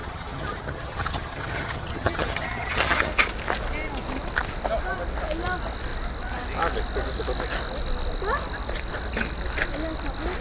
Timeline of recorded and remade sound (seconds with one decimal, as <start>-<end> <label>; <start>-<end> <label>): 0.0-3.1 remade; 3.1-10.4 recorded